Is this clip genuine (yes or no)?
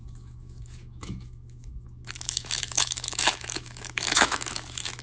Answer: no